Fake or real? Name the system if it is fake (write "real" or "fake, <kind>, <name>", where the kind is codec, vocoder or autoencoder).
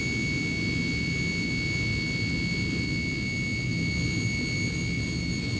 real